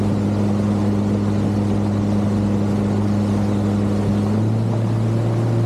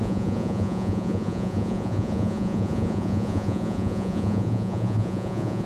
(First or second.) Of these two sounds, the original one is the first